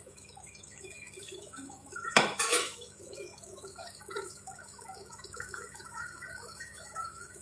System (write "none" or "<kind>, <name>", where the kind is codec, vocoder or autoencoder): autoencoder, DAC-VAE